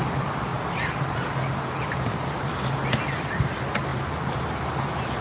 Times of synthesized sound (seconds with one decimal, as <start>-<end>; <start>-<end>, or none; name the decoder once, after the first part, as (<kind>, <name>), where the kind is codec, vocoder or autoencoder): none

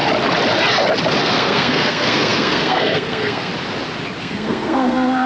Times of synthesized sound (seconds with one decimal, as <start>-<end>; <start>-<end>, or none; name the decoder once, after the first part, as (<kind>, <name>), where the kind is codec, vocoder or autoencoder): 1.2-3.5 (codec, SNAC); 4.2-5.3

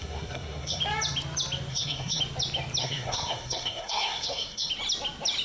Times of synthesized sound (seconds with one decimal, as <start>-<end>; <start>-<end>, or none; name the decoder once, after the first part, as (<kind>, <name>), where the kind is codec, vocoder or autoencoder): 0.0-0.8 (codec, SNAC); 1.7-2.2; 2.8-4.7